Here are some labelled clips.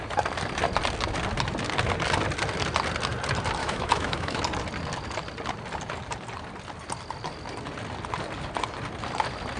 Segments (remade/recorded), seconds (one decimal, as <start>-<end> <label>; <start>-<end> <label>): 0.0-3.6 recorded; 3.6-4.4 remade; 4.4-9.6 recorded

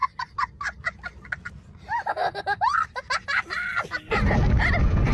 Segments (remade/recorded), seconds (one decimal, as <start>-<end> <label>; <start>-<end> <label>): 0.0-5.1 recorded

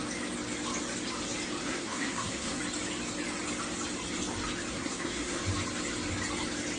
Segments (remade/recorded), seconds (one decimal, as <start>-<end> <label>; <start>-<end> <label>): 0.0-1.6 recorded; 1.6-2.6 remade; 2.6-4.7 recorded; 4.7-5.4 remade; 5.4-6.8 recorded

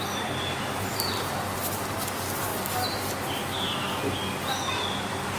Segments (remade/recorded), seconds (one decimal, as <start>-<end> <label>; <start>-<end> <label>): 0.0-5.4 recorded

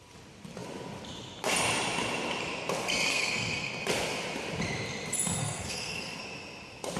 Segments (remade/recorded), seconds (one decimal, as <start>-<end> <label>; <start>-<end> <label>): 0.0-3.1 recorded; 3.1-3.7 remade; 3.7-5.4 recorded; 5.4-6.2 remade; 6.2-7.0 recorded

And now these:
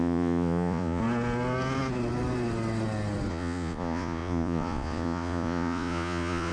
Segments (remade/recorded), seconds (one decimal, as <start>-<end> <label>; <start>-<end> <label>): 0.0-1.0 remade; 1.0-3.3 recorded; 3.3-6.5 remade

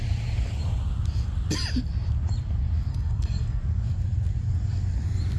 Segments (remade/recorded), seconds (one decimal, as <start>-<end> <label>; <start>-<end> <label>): 0.0-2.9 recorded; 2.9-3.6 remade; 3.6-5.4 recorded

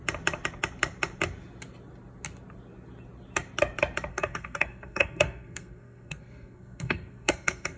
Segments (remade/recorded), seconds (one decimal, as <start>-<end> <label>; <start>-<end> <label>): 0.0-4.1 recorded; 4.1-7.8 remade